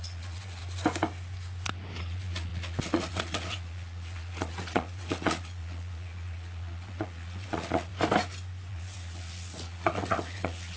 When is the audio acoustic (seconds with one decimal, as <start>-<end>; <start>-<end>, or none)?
0.6-2.0; 7.9-8.7